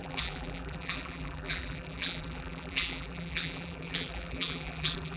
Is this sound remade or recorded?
remade